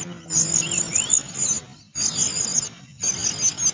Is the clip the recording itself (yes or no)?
yes